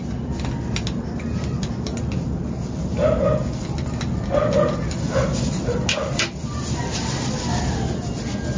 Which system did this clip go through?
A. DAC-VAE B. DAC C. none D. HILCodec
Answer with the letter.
C